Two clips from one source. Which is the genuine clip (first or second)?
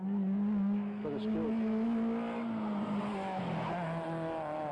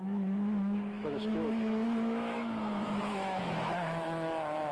first